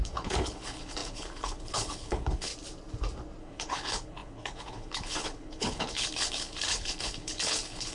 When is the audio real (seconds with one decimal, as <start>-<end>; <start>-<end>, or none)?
2.5-3.4